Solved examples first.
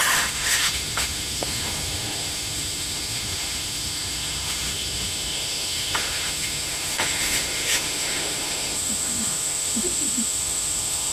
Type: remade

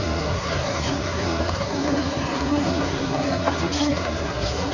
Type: remade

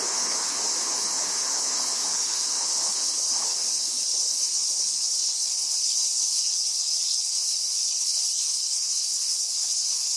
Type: remade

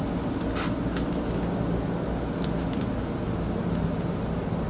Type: recorded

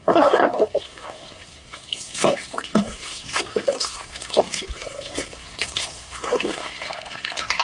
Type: remade